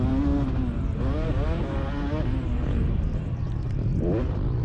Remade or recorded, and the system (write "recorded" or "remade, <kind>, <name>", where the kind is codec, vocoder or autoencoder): recorded